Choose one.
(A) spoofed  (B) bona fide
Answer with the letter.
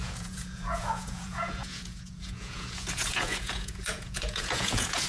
A